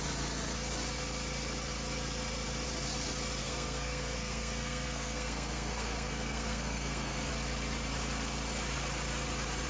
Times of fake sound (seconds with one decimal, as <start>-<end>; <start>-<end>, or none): 3.4-7.3